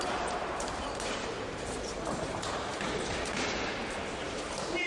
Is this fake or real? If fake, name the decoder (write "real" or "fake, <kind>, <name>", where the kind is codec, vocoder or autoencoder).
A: fake, vocoder, BigVGAN v2